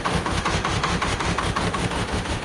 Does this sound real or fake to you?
fake